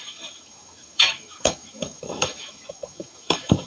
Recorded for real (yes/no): no